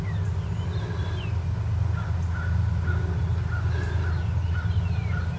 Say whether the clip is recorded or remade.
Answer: recorded